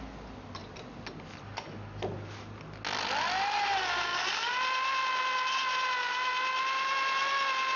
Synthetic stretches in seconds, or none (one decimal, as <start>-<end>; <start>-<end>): none